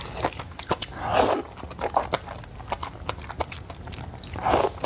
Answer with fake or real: real